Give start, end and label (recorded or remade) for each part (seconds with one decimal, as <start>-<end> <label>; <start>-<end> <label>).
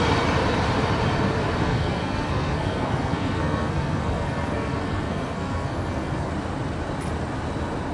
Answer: 0.0-1.6 recorded; 1.6-6.3 remade; 6.3-7.9 recorded